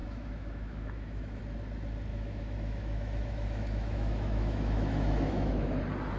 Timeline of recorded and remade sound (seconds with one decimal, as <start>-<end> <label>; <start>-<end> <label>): 0.0-1.4 remade; 1.4-2.1 recorded; 2.1-5.8 remade; 5.8-6.2 recorded